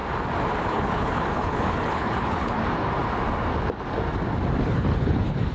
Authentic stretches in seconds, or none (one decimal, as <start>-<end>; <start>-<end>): 0.0-0.6; 2.6-4.6